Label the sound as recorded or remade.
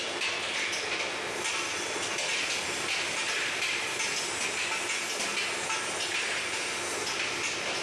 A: recorded